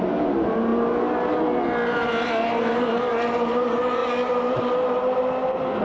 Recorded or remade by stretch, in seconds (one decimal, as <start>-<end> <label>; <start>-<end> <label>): 0.0-5.8 recorded